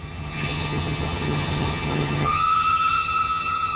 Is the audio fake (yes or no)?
yes